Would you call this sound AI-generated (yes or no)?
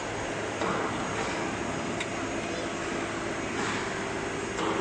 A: no